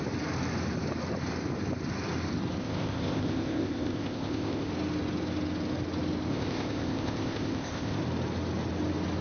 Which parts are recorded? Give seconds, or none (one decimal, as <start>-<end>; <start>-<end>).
0.0-2.6; 4.7-6.3; 8.0-9.2